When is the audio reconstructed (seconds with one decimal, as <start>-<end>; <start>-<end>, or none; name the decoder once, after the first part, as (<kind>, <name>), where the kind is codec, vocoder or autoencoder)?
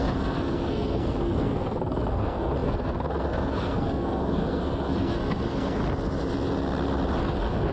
0.0-5.8 (codec, SNAC); 7.2-7.7